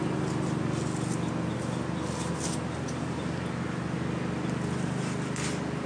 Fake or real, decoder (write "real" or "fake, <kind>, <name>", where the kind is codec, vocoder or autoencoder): real